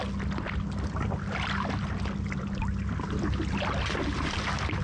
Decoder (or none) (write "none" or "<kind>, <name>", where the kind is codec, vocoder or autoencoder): none